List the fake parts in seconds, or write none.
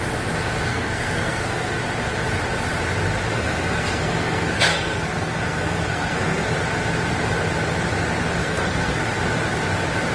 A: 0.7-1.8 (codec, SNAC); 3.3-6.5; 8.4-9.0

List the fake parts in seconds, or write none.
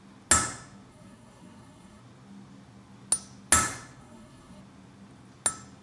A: 0.9-2.0 (codec, SNAC); 4.0-4.6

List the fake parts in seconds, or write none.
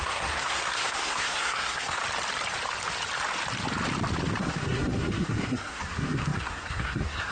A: 0.0-2.0 (codec, SNAC); 4.4-7.3